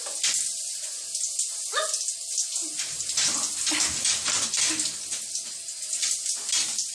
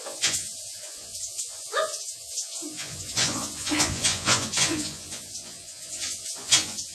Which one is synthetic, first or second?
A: second